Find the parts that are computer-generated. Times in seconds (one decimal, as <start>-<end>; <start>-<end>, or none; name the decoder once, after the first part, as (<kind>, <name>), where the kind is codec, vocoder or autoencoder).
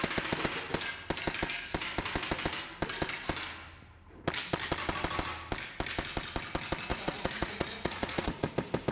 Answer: 6.9-8.5 (vocoder, Vocos)